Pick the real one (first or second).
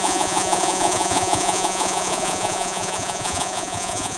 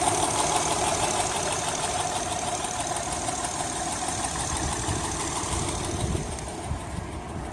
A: second